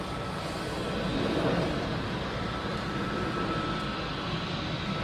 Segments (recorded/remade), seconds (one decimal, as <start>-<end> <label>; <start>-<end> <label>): 0.0-5.0 recorded